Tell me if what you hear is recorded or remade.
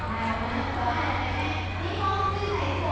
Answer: recorded